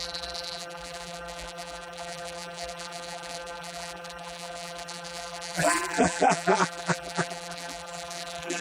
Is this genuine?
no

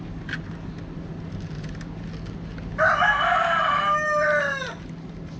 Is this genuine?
yes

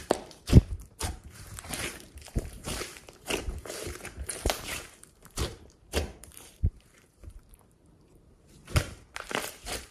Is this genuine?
no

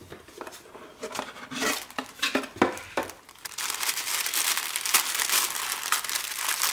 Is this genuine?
yes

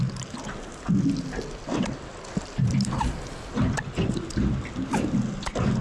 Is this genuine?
yes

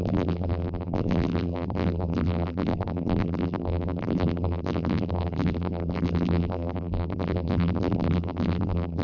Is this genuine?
no